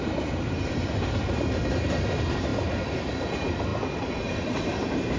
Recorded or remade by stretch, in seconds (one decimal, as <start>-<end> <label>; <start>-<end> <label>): 0.0-3.7 remade; 3.7-4.2 recorded; 4.2-5.2 remade